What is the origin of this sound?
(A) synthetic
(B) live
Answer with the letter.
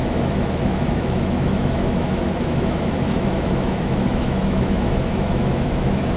A